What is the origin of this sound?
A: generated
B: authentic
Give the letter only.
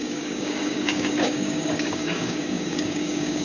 A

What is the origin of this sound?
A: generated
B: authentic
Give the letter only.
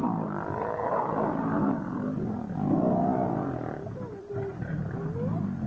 B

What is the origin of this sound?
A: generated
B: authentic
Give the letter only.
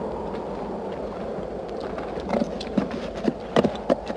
B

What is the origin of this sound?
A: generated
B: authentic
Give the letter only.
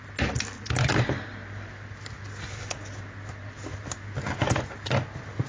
B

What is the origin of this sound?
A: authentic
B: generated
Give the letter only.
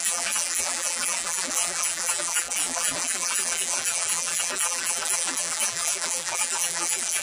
B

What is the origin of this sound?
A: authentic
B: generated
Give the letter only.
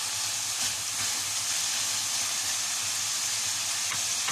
A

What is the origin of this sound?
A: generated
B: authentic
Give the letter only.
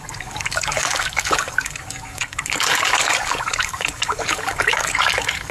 A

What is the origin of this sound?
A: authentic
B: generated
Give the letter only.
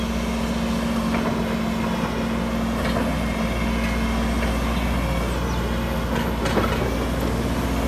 A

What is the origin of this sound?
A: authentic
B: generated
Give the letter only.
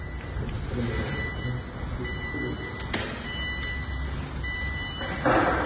A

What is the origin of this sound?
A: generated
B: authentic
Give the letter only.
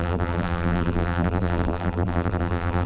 A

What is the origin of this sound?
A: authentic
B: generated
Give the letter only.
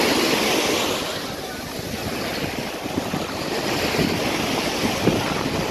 A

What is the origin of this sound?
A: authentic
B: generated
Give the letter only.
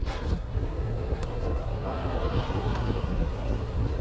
B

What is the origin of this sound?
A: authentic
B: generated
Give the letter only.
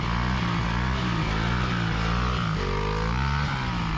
A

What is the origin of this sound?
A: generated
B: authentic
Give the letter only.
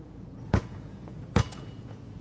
A